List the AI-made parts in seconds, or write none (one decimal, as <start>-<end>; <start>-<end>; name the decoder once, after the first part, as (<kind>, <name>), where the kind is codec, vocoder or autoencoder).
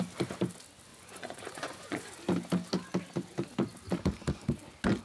0.9-2.1 (vocoder, Vocos)